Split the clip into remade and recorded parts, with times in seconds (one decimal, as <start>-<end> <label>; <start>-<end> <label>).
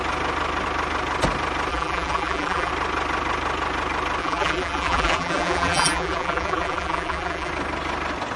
0.0-1.7 recorded; 1.7-2.7 remade; 2.7-4.2 recorded; 4.2-7.5 remade; 7.5-8.4 recorded